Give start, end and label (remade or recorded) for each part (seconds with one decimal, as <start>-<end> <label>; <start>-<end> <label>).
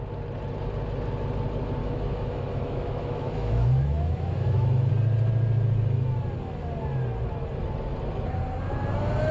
0.0-1.8 recorded; 1.8-4.9 remade; 4.9-9.3 recorded